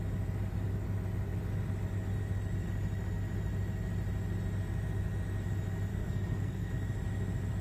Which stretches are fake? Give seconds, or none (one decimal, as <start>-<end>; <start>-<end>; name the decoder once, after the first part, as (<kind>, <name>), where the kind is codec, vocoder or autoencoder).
5.9-6.7 (codec, SNAC)